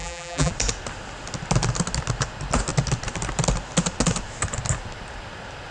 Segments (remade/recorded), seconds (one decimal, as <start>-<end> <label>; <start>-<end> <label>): 0.0-0.5 remade; 0.5-5.7 recorded

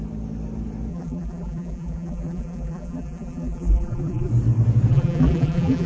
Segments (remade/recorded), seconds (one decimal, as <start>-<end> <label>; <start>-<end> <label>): 0.0-0.9 recorded; 0.9-4.3 remade; 4.3-4.9 recorded; 4.9-5.9 remade

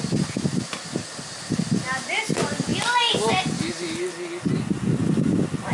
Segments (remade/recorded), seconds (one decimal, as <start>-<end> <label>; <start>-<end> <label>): 0.0-5.7 recorded

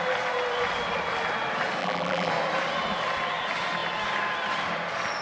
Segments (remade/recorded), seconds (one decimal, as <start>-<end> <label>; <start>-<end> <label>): 0.0-1.8 recorded; 1.8-2.3 remade; 2.3-5.2 recorded

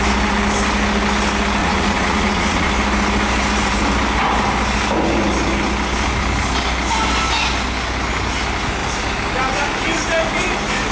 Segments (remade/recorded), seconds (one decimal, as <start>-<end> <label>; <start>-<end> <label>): 0.0-1.6 recorded; 1.6-2.7 remade; 2.7-10.9 recorded

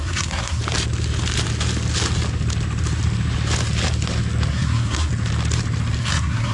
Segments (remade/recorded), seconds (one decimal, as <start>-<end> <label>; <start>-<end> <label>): 0.0-0.6 remade; 0.6-4.5 recorded; 4.5-5.1 remade; 5.1-6.0 recorded; 6.0-6.5 remade

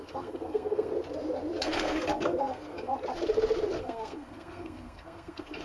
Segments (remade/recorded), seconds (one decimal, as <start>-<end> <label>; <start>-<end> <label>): 0.0-0.9 remade; 0.9-1.6 recorded; 1.6-2.9 remade; 2.9-3.8 recorded; 3.8-5.6 remade

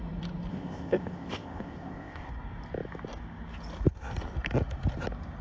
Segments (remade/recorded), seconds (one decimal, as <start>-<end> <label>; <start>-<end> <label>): 0.0-0.5 recorded; 0.5-2.3 remade; 2.3-5.4 recorded